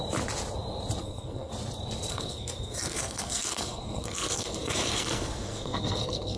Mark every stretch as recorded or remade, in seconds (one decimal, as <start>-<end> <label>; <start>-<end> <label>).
0.0-1.0 recorded; 1.0-1.5 remade; 1.5-2.1 recorded; 2.1-6.4 remade